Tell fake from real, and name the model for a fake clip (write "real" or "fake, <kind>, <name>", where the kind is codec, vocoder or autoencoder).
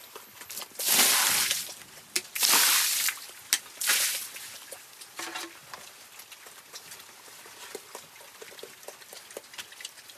real